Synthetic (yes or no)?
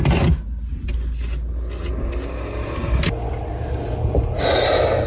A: no